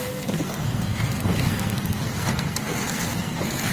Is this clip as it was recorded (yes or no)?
no